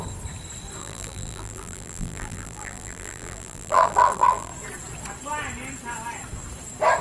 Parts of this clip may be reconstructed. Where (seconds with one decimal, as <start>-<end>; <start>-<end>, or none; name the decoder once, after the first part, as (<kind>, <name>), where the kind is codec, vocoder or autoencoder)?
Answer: 0.8-4.5 (vocoder, BigVGAN v2)